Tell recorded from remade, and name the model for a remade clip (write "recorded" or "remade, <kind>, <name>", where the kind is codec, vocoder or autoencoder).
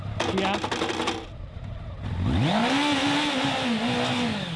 recorded